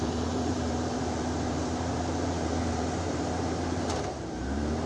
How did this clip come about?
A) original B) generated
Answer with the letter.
B